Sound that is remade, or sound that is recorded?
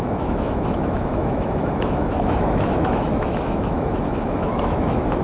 remade